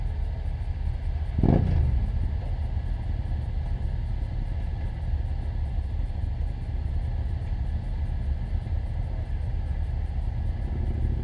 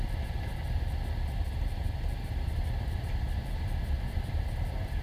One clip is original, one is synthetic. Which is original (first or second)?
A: first